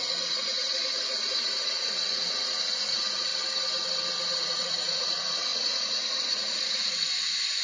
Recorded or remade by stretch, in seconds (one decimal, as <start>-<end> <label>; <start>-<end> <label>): 0.0-3.3 remade; 3.3-4.4 recorded; 4.4-7.6 remade